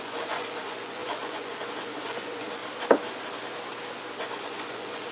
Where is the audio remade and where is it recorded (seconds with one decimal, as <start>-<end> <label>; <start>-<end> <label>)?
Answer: 0.0-2.6 remade; 2.6-4.2 recorded; 4.2-5.1 remade

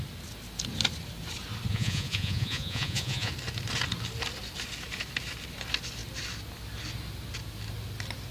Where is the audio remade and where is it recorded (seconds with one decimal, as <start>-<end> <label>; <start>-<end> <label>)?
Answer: 0.0-1.7 recorded; 1.7-3.3 remade; 3.3-8.3 recorded

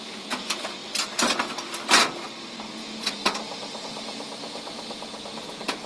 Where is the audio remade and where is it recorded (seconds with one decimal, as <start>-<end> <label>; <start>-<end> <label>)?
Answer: 0.0-0.8 remade; 0.8-2.7 recorded; 2.7-3.2 remade; 3.2-3.8 recorded; 3.8-5.9 remade

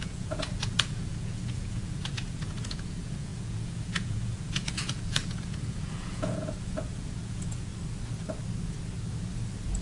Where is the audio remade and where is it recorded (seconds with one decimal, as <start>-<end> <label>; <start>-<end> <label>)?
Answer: 0.0-7.7 remade; 7.7-9.8 recorded

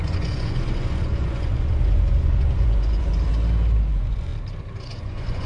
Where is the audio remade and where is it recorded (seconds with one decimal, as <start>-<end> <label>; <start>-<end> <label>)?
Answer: 0.0-3.3 remade; 3.3-3.9 recorded; 3.9-4.3 remade; 4.3-4.8 recorded; 4.8-5.5 remade

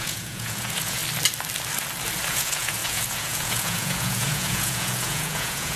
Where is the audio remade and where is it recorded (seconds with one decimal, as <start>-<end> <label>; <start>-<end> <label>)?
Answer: 0.0-1.0 remade; 1.0-2.3 recorded; 2.3-5.8 remade

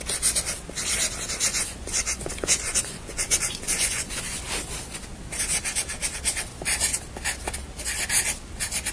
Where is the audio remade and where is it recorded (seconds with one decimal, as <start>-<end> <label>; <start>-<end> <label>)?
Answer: 0.0-1.5 recorded; 1.5-4.4 remade; 4.4-8.9 recorded